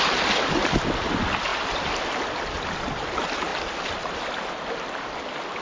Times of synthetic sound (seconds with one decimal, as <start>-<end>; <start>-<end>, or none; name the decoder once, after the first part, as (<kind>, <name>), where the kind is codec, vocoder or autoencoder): none